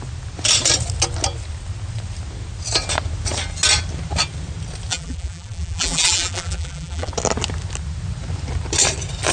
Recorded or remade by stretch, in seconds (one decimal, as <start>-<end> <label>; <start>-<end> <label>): 0.0-4.9 recorded; 4.9-7.1 remade; 7.1-9.3 recorded